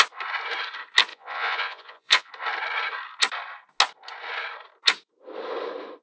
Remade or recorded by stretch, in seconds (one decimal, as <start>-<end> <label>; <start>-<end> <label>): 0.0-1.1 recorded; 1.1-2.3 remade; 2.3-6.0 recorded